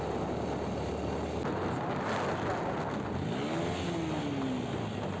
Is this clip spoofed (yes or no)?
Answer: no